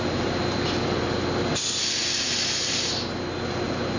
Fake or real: real